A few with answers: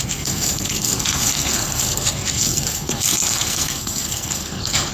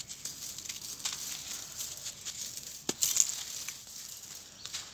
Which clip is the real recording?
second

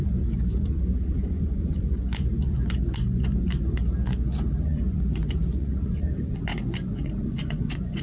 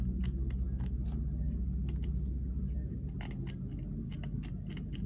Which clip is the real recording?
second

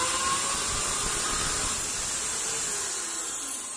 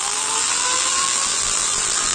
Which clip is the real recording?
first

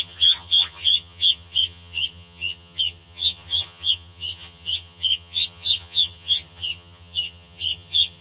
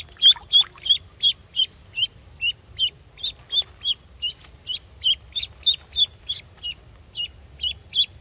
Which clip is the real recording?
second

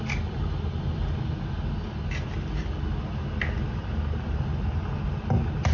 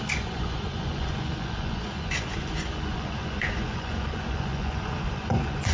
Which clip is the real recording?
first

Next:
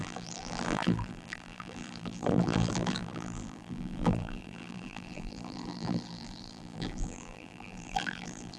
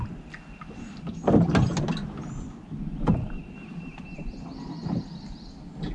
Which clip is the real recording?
second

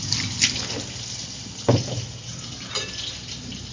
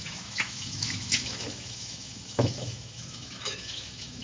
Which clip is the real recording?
first